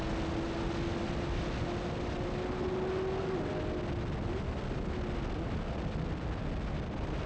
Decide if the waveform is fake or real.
real